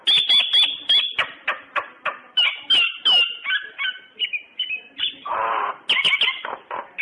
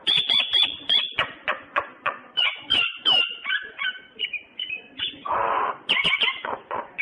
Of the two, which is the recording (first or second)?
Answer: first